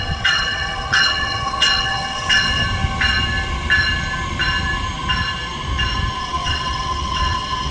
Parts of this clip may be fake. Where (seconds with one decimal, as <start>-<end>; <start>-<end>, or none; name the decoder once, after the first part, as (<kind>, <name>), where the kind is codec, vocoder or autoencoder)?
0.0-2.6 (vocoder, WaveNeXt); 6.2-7.7